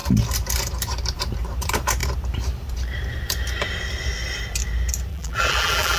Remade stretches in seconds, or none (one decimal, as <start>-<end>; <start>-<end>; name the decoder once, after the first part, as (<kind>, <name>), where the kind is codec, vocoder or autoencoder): 5.1-6.0 (vocoder, BigVGAN v2)